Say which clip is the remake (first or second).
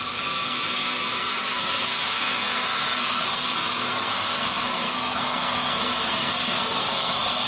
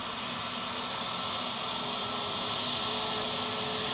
first